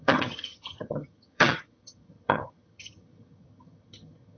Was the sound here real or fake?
fake